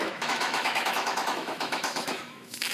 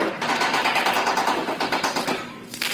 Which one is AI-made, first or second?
first